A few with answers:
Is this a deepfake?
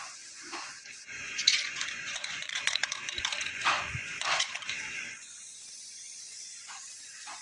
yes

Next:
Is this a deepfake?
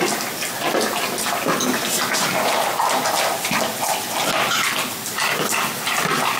no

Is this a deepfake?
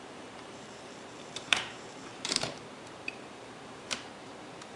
yes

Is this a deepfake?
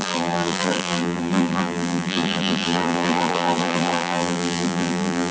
yes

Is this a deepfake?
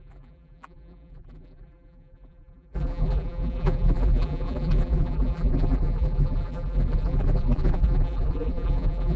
yes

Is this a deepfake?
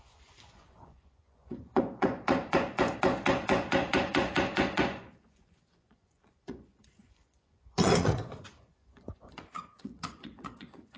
yes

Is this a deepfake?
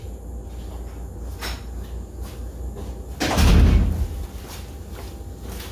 no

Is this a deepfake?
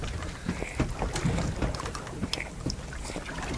no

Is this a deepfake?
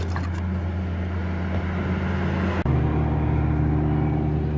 no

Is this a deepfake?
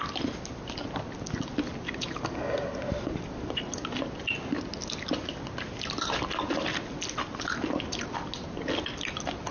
no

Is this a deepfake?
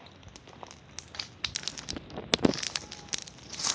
no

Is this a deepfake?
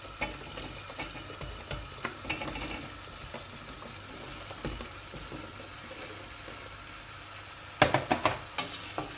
no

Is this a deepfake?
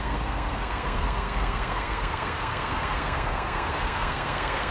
yes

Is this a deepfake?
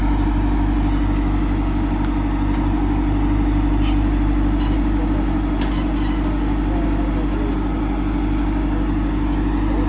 no